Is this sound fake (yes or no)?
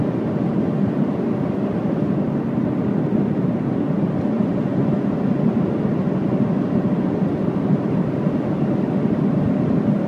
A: no